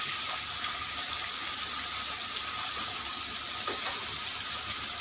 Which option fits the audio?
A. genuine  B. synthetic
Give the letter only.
A